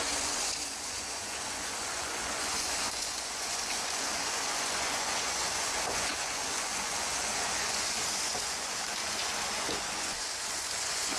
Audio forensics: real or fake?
fake